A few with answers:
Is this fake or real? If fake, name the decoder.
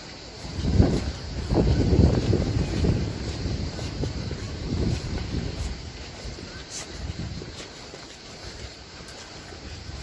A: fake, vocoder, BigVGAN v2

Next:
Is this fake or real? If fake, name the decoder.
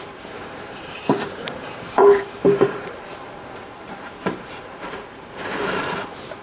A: fake, vocoder, BigVGAN v2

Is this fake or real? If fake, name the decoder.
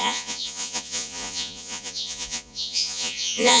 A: fake, vocoder, Vocos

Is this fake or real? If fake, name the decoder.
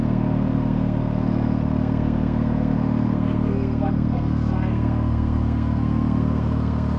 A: fake, codec, SNAC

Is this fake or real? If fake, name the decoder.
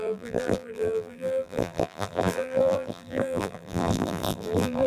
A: fake, vocoder, BigVGAN v2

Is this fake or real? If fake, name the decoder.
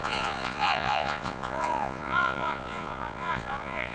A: fake, vocoder, Vocos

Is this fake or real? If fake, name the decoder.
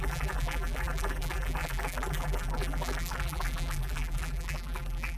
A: fake, vocoder, BigVGAN v2